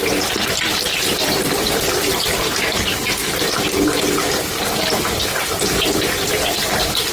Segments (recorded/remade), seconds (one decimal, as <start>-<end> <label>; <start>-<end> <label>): 0.0-3.2 remade; 3.2-5.5 recorded; 5.5-7.1 remade